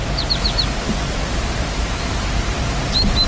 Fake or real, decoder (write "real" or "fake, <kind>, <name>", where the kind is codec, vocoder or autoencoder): fake, vocoder, BigVGAN v2